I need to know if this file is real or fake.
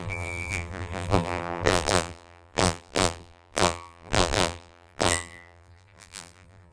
fake